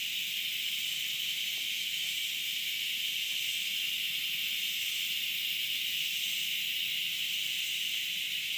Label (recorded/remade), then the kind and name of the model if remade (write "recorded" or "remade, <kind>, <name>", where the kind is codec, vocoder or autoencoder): recorded